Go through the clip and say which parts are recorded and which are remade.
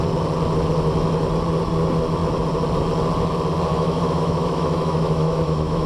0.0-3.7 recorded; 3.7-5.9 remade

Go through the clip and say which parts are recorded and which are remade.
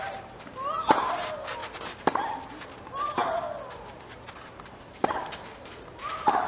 0.0-6.5 recorded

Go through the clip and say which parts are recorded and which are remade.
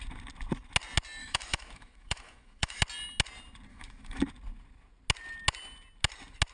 0.0-1.2 recorded; 1.2-2.8 remade; 2.8-3.7 recorded; 3.7-4.2 remade; 4.2-6.5 recorded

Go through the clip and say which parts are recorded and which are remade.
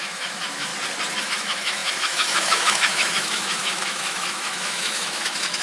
0.0-0.7 remade; 0.7-1.2 recorded; 1.2-5.6 remade